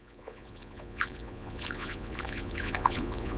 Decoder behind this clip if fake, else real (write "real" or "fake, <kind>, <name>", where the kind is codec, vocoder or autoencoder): fake, vocoder, Vocos